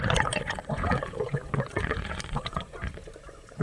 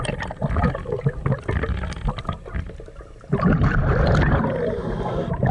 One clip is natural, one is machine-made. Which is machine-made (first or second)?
first